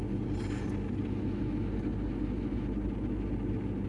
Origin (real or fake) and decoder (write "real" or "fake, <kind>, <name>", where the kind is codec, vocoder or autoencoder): real